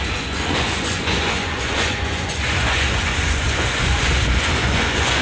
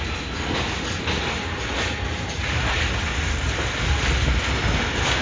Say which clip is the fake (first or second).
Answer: first